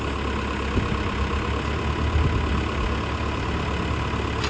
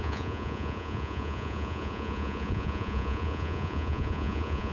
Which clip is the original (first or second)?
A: first